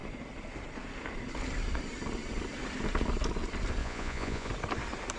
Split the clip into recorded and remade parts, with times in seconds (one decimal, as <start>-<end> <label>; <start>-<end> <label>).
0.0-3.8 recorded; 3.8-4.5 remade; 4.5-5.2 recorded